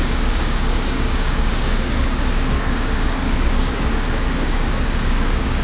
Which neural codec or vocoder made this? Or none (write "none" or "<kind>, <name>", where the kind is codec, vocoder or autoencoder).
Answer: codec, DAC